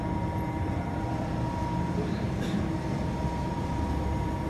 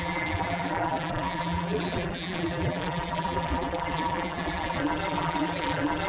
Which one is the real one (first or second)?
first